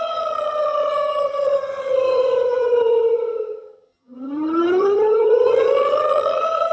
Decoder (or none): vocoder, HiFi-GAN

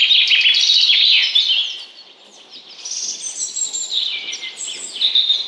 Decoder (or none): none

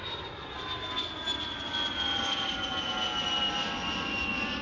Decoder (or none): none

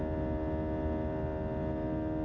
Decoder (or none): none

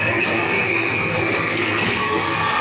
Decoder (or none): codec, SNAC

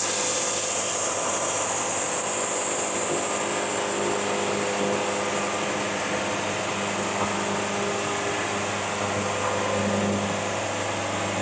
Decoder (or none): none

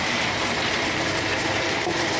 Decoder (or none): none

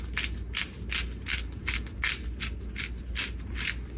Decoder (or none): none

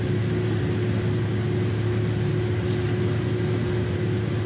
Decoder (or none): none